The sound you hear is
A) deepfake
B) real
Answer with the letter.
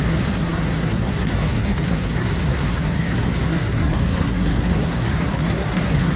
A